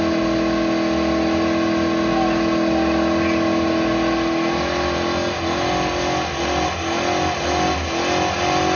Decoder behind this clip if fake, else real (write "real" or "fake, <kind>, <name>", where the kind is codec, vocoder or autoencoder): real